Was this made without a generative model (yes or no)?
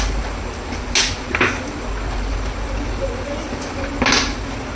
yes